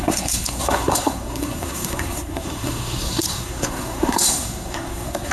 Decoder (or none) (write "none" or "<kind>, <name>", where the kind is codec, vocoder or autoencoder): codec, SNAC